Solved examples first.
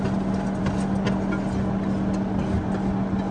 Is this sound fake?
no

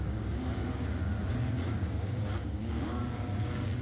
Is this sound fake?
yes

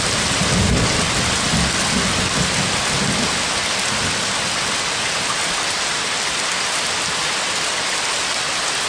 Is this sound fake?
no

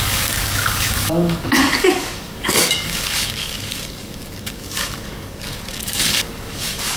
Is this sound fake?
yes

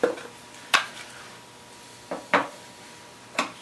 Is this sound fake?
no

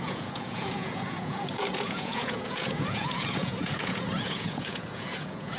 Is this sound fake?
yes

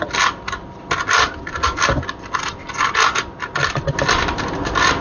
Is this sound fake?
no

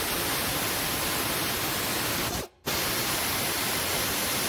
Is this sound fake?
no